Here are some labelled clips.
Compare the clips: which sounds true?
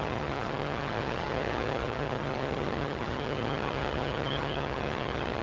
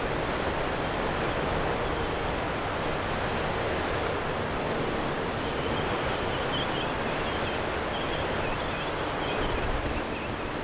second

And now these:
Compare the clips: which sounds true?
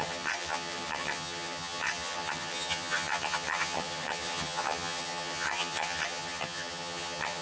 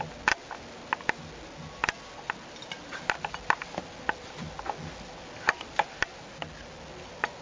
second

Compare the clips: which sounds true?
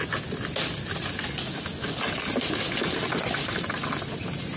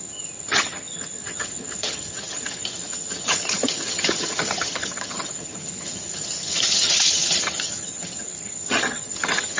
first